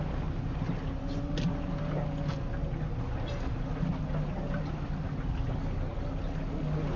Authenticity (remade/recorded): recorded